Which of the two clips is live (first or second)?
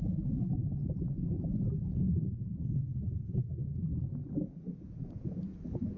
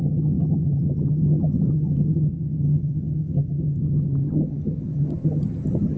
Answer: first